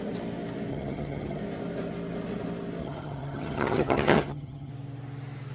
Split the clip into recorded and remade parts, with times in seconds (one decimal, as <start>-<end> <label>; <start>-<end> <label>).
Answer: 0.0-0.7 recorded; 0.7-1.4 remade; 1.4-2.8 recorded; 2.8-4.7 remade; 4.7-5.5 recorded

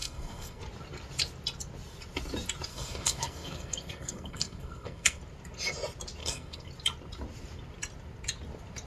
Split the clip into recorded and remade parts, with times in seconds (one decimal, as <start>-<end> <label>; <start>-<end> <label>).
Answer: 0.0-0.6 remade; 0.6-2.7 recorded; 2.7-5.2 remade; 5.2-6.2 recorded; 6.2-6.7 remade; 6.7-8.9 recorded

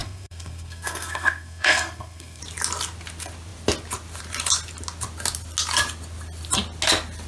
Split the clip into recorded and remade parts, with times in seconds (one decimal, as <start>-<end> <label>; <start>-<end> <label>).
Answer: 0.0-2.4 remade; 2.4-7.3 recorded

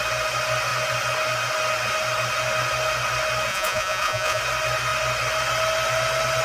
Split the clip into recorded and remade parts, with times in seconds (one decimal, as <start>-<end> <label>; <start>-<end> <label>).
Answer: 0.0-3.5 recorded; 3.5-4.4 remade; 4.4-6.4 recorded

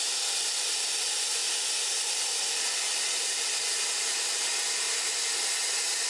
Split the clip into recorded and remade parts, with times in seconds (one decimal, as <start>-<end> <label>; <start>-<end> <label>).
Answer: 0.0-6.1 recorded

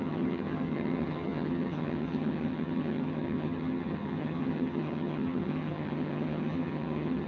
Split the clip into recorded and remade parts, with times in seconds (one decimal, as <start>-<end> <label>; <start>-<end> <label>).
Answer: 0.0-7.3 remade

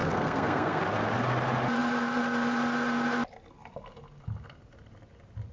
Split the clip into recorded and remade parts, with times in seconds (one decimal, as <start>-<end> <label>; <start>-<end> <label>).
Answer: 0.0-0.8 remade; 0.8-5.5 recorded